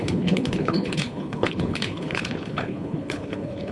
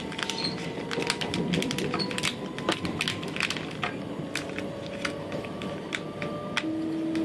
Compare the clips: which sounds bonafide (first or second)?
second